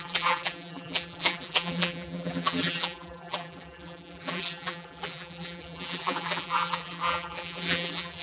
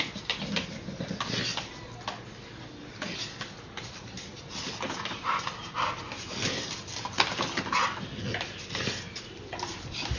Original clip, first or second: second